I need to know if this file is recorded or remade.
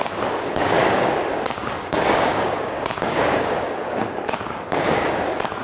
remade